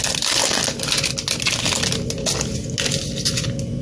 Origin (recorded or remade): recorded